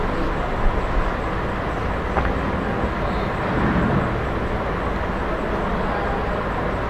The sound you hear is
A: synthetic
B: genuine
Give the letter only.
B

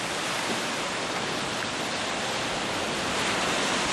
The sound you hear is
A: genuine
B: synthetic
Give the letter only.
A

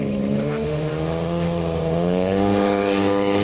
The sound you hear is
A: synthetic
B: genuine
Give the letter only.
A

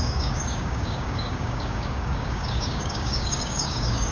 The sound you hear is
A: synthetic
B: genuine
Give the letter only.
A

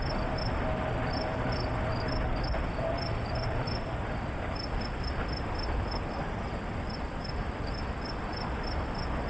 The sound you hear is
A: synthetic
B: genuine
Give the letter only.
A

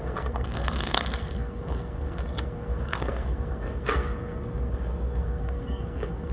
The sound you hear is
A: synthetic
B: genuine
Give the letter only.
A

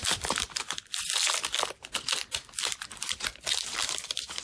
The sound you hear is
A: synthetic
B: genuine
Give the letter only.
B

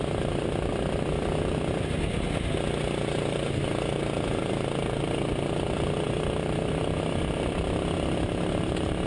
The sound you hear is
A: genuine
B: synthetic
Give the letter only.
A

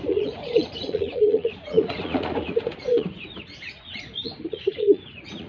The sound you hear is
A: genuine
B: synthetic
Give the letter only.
B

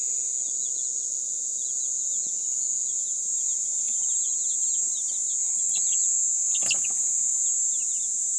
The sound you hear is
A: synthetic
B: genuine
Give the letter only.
B